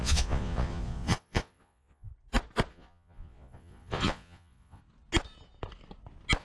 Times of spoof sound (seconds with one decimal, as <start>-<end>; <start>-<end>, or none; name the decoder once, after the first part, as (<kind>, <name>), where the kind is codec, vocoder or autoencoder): 0.0-2.1 (vocoder, Vocos); 2.7-4.8

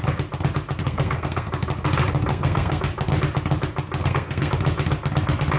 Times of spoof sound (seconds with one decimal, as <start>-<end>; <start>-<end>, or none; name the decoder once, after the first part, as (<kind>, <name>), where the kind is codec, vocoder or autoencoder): 0.8-1.5 (codec, SNAC); 2.3-2.8; 4.0-4.5

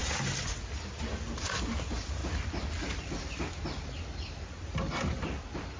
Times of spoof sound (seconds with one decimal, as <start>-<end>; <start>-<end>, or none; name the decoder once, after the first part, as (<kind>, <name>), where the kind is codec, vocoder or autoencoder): 2.2-3.5 (vocoder, BigVGAN v2)

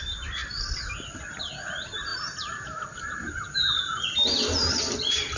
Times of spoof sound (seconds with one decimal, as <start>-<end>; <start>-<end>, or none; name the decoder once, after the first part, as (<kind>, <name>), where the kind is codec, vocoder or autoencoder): none

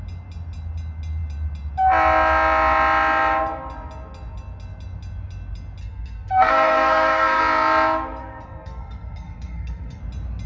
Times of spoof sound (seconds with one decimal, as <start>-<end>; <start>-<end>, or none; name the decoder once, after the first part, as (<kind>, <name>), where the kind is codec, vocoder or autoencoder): 5.8-7.4 (codec, SNAC); 8.2-10.0

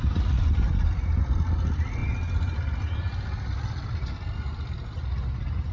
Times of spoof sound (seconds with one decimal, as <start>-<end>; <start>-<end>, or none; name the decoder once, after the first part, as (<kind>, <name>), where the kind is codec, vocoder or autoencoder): none

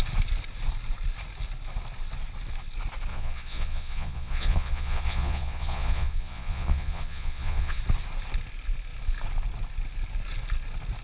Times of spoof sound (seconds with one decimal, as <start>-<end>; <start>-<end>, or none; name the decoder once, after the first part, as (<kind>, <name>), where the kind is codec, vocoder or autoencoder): 3.1-7.8 (vocoder, Vocos)